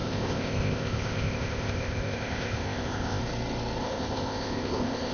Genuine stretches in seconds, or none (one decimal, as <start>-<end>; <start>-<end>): 3.2-3.8